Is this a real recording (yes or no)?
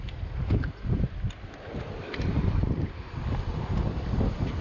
yes